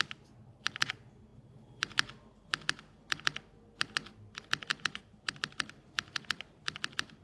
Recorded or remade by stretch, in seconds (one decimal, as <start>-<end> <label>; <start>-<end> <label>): 0.0-4.7 recorded; 4.7-5.3 remade; 5.3-7.2 recorded